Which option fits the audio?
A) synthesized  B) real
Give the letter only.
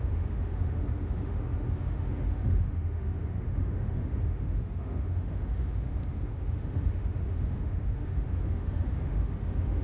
A